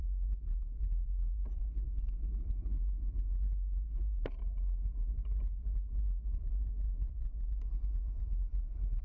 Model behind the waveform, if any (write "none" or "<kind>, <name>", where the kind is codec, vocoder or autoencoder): vocoder, BigVGAN v2